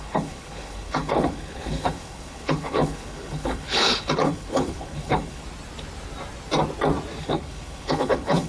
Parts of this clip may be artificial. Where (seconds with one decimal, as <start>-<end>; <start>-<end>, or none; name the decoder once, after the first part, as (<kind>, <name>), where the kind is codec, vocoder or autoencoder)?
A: 0.0-5.4 (codec, HILCodec); 7.2-8.5